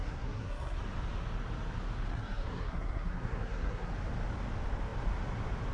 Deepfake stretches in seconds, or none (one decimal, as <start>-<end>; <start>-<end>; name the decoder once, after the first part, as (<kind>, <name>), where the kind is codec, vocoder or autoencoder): 0.0-0.8 (codec, SNAC); 2.1-3.9